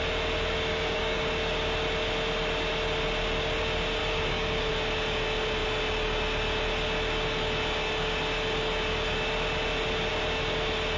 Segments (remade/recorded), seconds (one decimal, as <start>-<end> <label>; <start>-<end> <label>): 0.0-0.7 recorded; 0.7-1.2 remade; 1.2-4.0 recorded; 4.0-4.7 remade; 4.7-11.0 recorded